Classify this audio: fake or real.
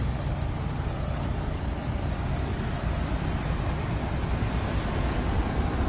real